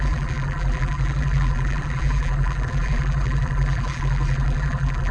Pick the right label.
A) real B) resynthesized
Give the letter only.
B